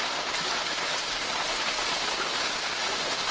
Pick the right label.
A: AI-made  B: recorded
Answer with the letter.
B